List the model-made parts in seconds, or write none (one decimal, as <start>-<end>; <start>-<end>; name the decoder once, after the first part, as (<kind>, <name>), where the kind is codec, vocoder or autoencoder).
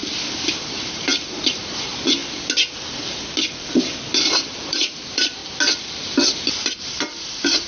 0.6-2.2 (vocoder, BigVGAN v2); 4.2-5.4; 6.8-7.7